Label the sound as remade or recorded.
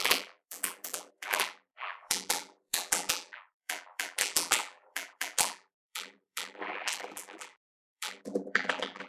remade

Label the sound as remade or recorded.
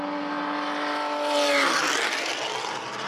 recorded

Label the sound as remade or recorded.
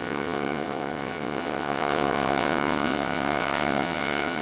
remade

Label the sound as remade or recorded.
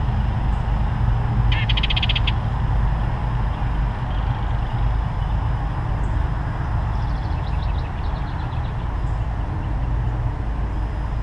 recorded